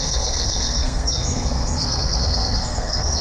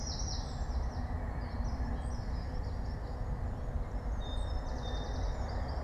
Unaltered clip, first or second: second